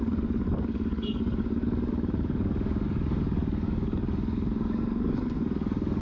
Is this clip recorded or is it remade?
remade